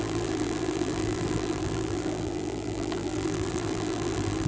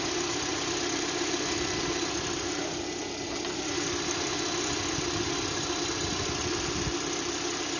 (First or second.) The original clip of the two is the second